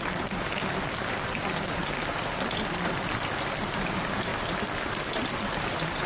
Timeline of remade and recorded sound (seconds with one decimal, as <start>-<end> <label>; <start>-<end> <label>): 0.0-6.1 recorded